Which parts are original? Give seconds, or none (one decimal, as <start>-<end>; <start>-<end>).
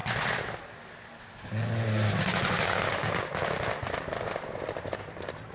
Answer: 0.0-3.2